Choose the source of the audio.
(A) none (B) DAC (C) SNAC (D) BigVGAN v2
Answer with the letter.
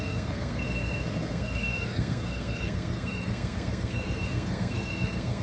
C